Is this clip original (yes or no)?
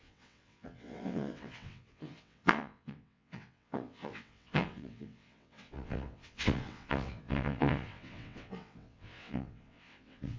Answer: no